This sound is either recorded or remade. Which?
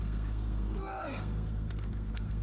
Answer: remade